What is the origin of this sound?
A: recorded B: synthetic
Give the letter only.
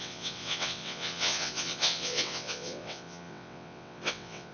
B